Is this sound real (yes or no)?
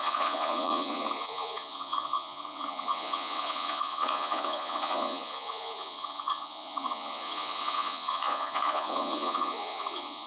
no